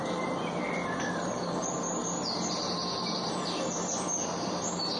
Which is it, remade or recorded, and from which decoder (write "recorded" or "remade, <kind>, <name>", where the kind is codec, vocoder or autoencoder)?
remade, vocoder, BigVGAN v2